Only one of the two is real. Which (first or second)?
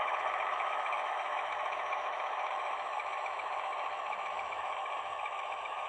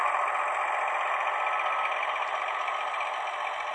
second